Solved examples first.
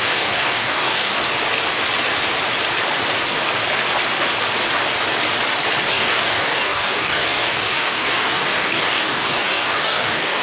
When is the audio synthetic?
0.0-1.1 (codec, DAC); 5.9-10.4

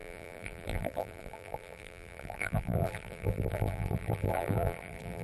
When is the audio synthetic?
0.0-5.2 (vocoder, BigVGAN v2)

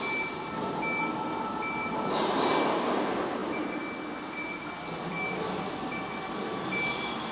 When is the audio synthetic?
none

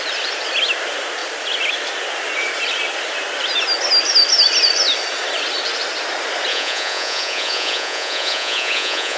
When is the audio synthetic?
6.5-9.2 (vocoder, Vocos)

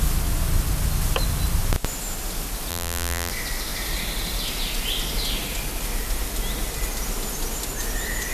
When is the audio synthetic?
2.7-3.3 (vocoder, BigVGAN v2)